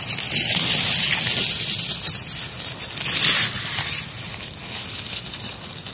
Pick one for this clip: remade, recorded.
recorded